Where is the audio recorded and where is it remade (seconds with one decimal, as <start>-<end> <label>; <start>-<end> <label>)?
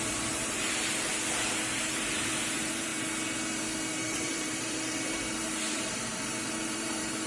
0.0-1.1 remade; 1.1-1.8 recorded; 1.8-2.9 remade; 2.9-3.9 recorded; 3.9-7.3 remade